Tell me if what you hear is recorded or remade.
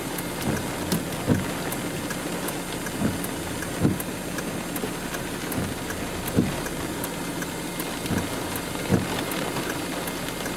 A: recorded